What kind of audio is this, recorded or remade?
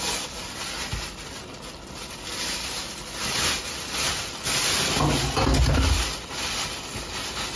recorded